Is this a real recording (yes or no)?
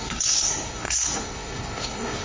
no